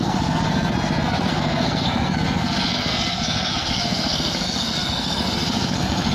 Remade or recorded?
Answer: remade